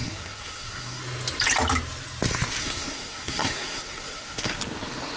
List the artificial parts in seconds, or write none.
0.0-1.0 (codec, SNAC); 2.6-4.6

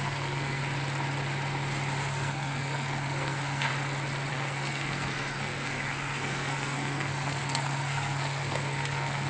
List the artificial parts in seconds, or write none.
0.0-0.6 (codec, SNAC); 2.0-3.7; 4.3-9.3

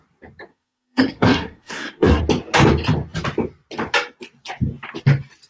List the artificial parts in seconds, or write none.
0.5-2.2 (codec, SNAC)

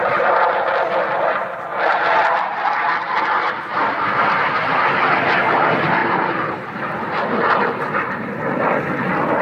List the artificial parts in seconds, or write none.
none

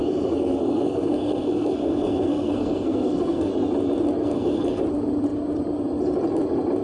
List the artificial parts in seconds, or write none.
0.0-3.5 (codec, SNAC); 4.2-4.8

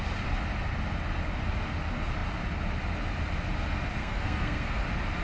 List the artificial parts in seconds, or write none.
4.0-4.8 (codec, SNAC)

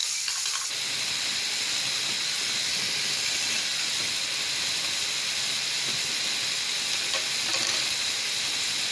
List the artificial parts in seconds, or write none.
none